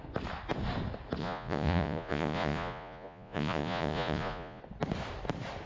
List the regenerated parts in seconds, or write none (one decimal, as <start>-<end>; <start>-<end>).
1.2-4.6